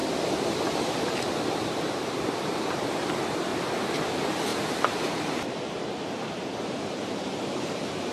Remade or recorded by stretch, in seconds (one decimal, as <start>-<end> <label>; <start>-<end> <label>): 0.0-1.2 recorded; 1.2-8.1 remade